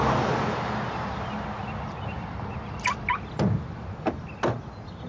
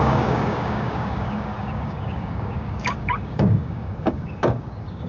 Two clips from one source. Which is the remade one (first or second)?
second